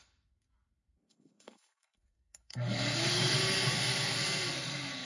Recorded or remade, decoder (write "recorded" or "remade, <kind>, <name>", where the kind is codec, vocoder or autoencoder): remade, codec, SNAC